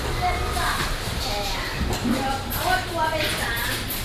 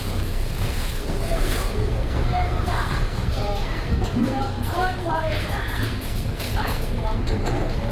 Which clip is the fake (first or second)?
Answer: second